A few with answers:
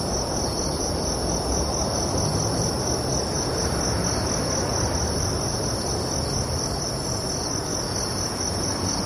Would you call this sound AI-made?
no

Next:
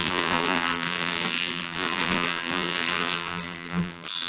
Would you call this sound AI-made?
yes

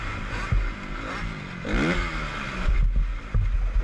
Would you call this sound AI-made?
no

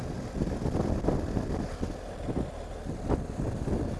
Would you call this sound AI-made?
no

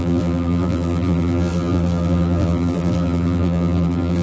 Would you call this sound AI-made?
yes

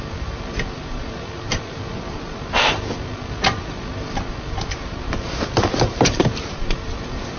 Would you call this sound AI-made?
yes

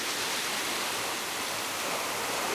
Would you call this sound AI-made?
yes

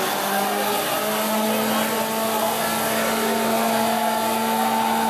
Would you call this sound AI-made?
no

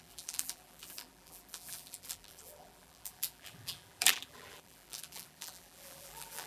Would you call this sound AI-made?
yes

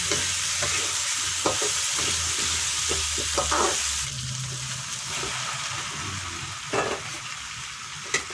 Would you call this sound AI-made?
no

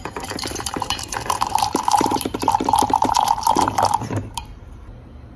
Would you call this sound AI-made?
yes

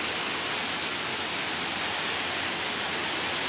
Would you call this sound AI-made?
no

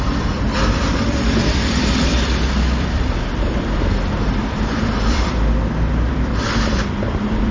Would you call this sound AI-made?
yes